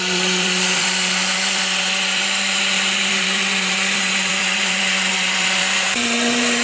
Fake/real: fake